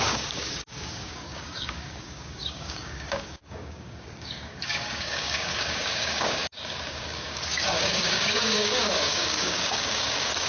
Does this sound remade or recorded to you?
remade